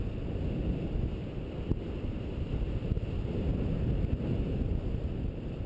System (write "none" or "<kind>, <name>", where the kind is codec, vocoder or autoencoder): none